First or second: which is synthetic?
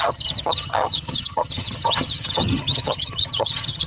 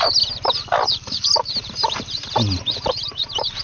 first